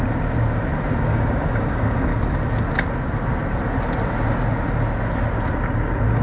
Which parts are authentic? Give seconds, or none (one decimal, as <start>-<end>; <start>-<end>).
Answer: 0.0-1.1; 2.2-6.2